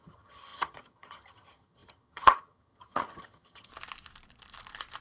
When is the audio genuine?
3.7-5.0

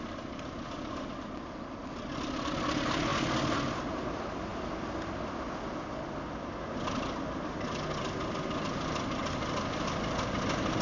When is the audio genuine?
0.0-10.8

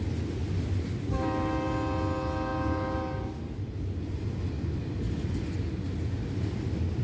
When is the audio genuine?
0.0-7.0

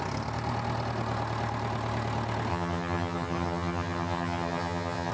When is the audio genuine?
0.0-2.5

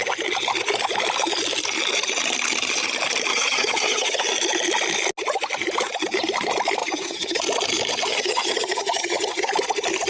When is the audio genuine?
0.0-3.3; 4.2-6.8; 7.4-8.1; 9.5-10.1